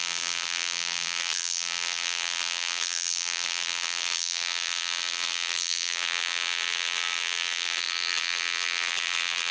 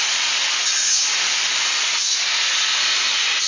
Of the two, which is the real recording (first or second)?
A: second